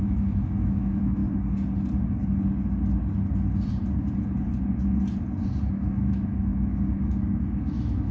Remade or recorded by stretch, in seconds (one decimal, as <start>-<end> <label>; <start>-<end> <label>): 0.0-1.2 remade; 1.2-5.7 recorded; 5.7-8.1 remade